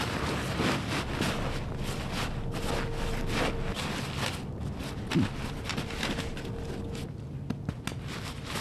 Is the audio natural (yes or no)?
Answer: yes